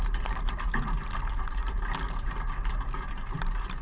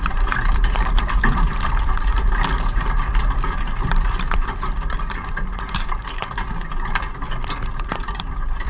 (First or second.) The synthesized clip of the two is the second